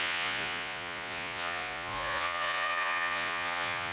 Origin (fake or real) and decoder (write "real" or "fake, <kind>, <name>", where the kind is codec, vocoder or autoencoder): fake, vocoder, Vocos